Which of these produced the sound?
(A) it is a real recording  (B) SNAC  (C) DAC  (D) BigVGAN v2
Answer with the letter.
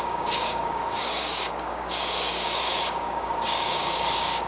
C